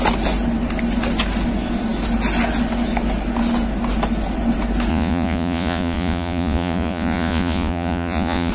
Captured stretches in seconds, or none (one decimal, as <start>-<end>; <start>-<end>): 0.0-4.9